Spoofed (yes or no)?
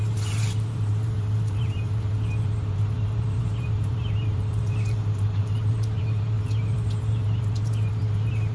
yes